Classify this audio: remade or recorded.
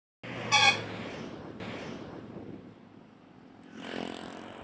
recorded